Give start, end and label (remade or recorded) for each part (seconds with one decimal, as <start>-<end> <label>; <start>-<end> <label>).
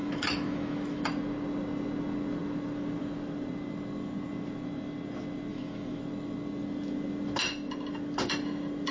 0.0-1.0 remade; 1.0-5.5 recorded; 5.5-6.0 remade; 6.0-8.9 recorded